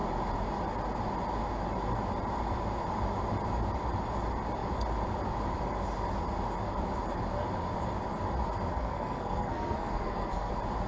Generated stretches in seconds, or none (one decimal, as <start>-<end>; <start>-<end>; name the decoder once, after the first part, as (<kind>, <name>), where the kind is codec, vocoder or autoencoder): 8.7-10.5 (codec, SNAC)